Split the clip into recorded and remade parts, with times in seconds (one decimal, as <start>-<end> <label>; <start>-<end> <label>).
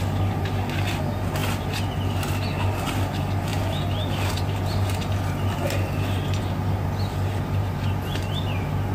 0.0-8.9 recorded